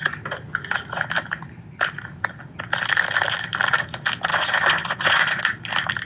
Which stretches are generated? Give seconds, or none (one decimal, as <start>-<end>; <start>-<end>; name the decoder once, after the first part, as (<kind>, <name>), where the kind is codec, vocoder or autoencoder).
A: 4.3-5.4 (vocoder, Vocos)